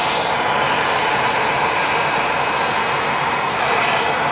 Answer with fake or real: real